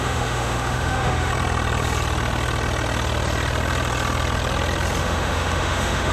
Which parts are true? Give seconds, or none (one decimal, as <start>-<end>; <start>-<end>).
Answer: 1.3-5.0